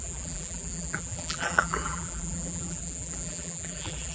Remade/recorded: remade